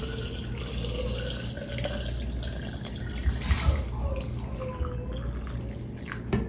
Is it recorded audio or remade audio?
recorded